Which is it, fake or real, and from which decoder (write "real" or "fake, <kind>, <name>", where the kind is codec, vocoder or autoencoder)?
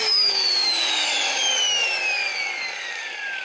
fake, codec, DAC